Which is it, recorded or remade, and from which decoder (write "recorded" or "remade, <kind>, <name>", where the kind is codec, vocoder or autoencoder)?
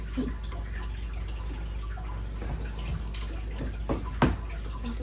recorded